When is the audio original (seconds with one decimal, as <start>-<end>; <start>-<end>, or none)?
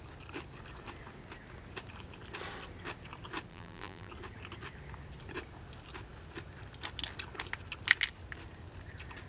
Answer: 0.0-3.5; 4.1-9.3